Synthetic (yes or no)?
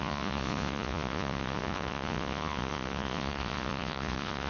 yes